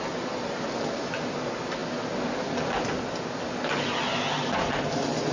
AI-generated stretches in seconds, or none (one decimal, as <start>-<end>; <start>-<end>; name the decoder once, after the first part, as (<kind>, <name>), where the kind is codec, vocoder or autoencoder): none